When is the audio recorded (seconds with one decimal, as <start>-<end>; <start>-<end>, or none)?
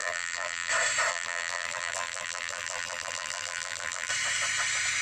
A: 0.7-1.1; 4.1-5.0